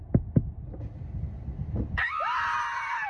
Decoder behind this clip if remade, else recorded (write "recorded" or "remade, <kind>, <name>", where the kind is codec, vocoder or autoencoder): recorded